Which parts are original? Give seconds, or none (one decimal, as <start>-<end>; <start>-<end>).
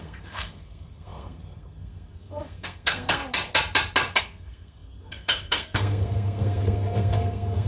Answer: 3.2-4.2